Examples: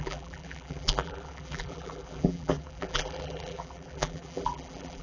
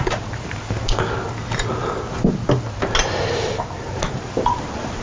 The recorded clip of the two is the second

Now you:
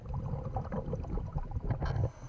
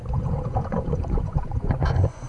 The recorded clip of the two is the first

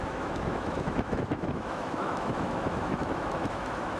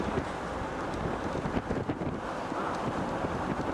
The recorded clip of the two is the second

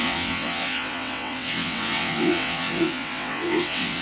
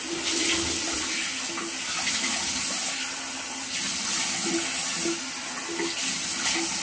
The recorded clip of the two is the second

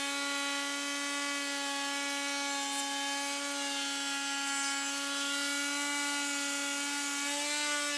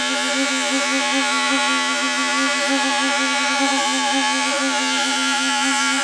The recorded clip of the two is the first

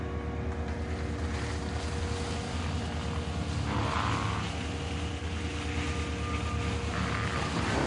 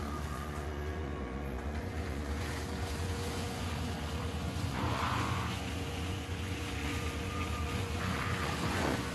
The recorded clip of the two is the first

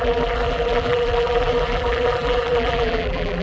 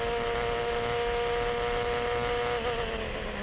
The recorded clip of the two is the second